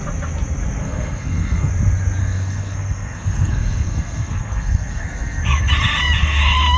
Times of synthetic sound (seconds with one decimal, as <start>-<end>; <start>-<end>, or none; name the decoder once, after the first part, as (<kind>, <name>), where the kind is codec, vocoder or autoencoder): 0.8-1.7 (codec, SNAC); 2.2-5.7